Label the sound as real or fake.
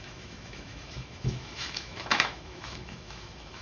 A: fake